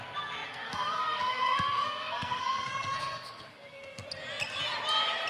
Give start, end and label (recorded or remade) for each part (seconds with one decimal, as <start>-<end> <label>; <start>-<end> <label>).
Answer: 0.0-4.0 remade; 4.0-5.3 recorded